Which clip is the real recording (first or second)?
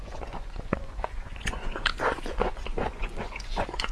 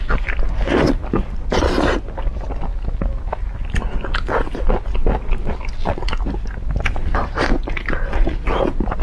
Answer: second